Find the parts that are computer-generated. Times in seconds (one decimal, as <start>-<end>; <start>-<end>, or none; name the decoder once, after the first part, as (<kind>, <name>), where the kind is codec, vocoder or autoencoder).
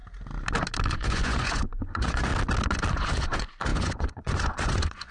0.9-2.3 (vocoder, Vocos); 2.9-5.1